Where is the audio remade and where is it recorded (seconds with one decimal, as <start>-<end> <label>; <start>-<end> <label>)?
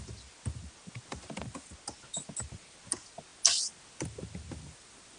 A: 0.0-5.2 recorded